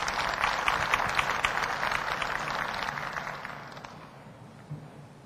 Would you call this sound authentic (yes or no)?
yes